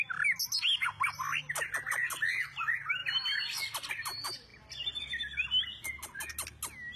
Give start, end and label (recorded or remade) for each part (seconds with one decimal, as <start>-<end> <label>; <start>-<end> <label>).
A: 0.0-3.0 recorded; 3.0-3.9 remade; 3.9-7.0 recorded